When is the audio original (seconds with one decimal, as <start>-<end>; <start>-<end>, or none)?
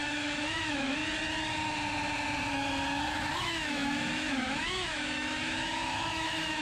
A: 1.0-3.4